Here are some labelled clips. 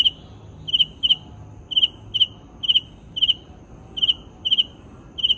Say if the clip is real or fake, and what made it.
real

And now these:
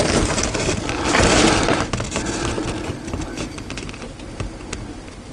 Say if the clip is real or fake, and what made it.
real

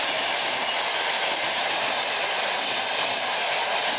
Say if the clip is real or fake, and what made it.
real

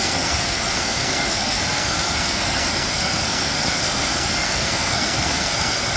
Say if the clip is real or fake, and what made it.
fake, codec, SNAC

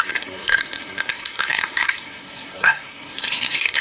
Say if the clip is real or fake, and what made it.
fake, codec, SNAC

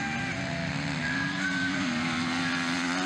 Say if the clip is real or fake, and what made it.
real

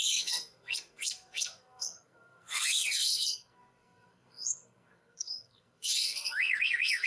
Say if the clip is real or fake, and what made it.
fake, codec, SNAC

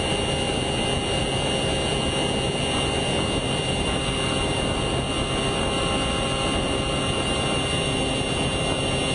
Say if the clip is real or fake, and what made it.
real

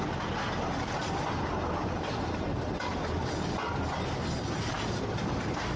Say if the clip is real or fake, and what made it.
real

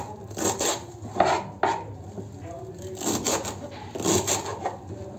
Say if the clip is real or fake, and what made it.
real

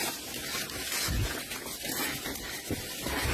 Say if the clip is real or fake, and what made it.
real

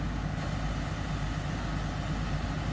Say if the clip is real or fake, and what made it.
real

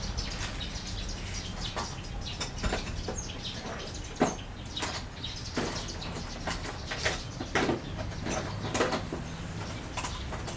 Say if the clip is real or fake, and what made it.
real